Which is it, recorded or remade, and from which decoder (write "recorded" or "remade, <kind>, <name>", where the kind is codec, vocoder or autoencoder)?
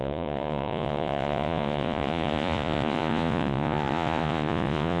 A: remade, vocoder, Vocos